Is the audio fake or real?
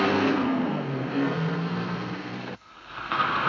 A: fake